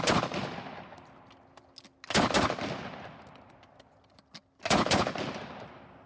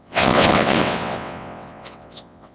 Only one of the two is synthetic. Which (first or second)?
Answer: second